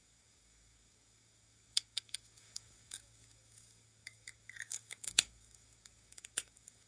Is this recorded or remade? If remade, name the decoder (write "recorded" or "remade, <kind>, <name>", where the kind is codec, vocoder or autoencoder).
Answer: remade, codec, DAC